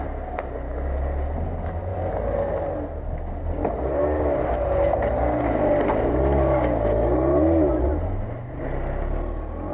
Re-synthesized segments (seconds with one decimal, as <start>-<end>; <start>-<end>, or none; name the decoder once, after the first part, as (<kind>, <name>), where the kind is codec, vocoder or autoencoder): none